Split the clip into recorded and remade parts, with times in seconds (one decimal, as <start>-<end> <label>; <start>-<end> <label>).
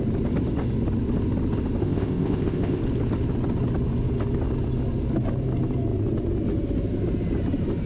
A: 0.0-1.8 recorded; 1.8-2.8 remade; 2.8-7.9 recorded